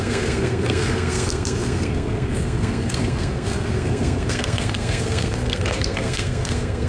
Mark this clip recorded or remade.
remade